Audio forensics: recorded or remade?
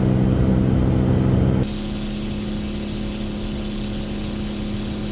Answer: recorded